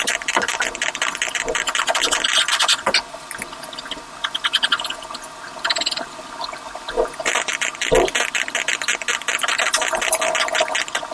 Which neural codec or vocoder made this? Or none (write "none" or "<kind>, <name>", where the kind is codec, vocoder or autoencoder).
none